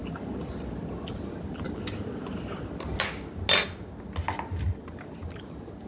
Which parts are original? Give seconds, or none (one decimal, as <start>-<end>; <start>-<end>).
0.0-5.9